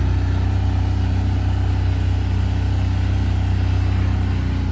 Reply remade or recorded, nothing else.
recorded